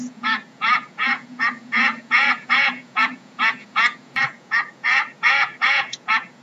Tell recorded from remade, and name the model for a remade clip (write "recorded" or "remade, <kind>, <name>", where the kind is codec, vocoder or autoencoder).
remade, vocoder, Vocos